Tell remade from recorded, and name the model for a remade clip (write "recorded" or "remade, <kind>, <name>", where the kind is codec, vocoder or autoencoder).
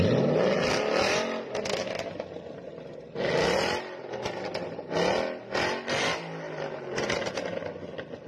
recorded